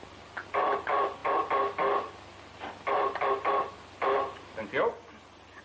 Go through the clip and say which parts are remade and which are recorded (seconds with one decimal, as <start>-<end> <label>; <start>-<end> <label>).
0.0-5.6 recorded